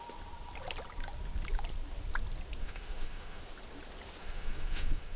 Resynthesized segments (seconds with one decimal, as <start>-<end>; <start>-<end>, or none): 2.6-3.4; 4.2-5.2